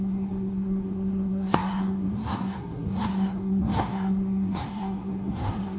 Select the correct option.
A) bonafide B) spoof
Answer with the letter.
B